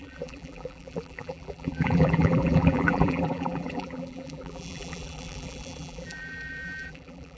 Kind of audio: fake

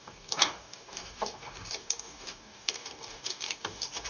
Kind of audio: fake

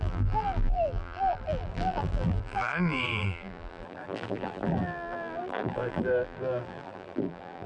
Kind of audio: fake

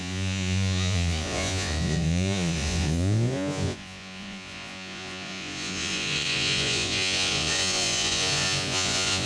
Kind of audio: fake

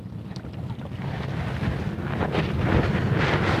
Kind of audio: real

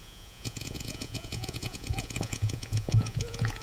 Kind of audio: fake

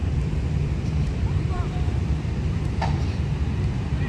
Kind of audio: fake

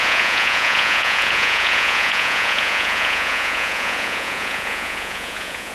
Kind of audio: fake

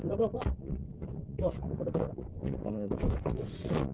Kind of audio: fake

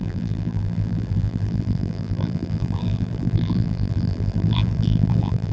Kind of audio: fake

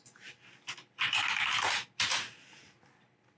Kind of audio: real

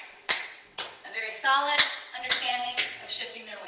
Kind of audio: fake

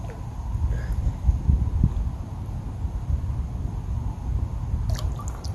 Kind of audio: real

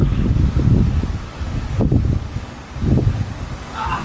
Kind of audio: fake